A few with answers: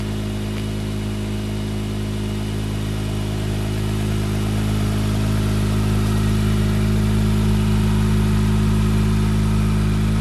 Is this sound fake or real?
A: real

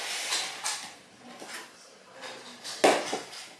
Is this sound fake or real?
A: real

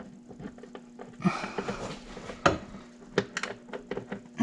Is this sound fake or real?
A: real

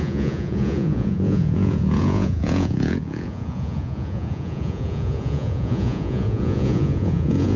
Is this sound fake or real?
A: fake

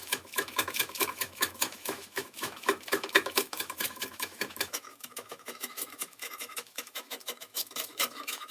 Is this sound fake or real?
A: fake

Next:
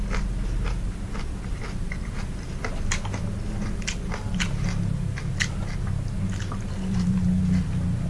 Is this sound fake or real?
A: real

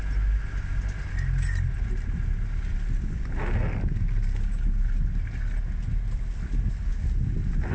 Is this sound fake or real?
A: real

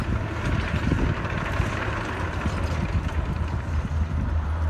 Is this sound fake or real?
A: real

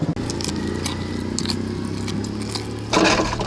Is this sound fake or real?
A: real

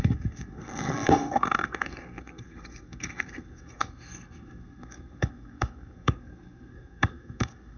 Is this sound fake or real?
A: fake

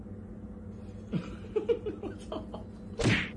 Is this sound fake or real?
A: real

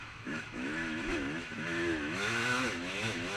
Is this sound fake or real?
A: fake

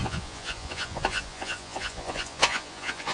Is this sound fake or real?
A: fake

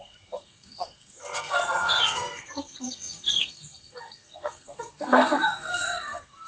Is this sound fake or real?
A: fake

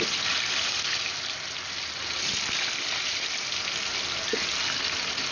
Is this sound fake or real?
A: real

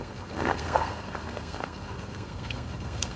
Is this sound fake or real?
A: fake